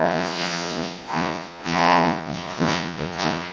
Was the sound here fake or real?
fake